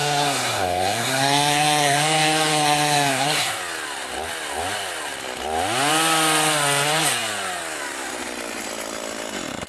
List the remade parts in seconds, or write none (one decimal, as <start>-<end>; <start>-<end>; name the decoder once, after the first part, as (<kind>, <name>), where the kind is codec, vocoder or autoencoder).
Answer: 0.0-3.6 (codec, SNAC)